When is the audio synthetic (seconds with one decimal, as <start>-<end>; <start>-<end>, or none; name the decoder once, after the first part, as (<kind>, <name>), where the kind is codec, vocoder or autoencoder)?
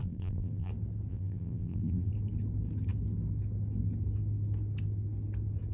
0.0-0.7 (vocoder, BigVGAN v2); 1.1-2.1